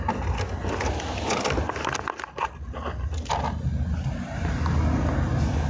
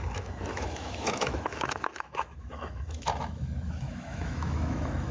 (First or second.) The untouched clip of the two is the first